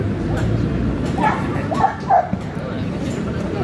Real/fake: fake